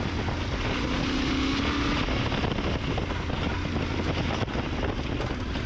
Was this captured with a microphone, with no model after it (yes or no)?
yes